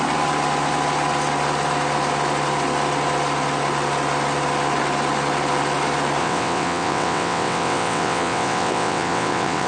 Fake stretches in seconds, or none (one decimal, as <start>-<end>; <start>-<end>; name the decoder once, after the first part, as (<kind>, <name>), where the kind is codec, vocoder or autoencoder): 6.2-9.7 (vocoder, WaveNeXt)